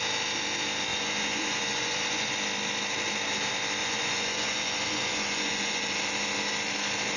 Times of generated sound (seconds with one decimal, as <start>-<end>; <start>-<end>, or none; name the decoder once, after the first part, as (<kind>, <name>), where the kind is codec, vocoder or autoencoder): 0.9-2.3 (vocoder, Vocos); 3.8-5.8